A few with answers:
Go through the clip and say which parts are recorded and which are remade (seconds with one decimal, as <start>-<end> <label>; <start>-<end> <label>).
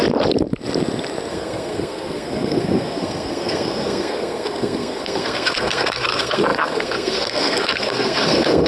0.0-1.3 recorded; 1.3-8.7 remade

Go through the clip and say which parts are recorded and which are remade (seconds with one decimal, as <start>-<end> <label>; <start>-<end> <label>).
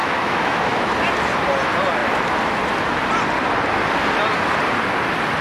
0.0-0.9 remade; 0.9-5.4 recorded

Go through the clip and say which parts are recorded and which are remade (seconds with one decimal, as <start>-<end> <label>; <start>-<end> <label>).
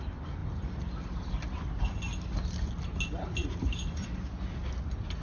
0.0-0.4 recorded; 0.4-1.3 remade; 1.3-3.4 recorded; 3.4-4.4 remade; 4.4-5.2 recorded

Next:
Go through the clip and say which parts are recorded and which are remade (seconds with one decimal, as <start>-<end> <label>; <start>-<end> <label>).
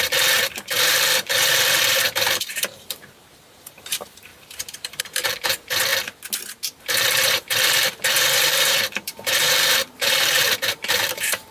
0.0-5.9 remade; 5.9-6.8 recorded; 6.8-11.5 remade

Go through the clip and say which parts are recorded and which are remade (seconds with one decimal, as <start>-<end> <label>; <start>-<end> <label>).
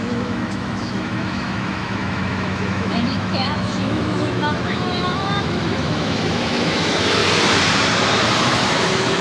0.0-7.2 remade; 7.2-8.4 recorded; 8.4-9.2 remade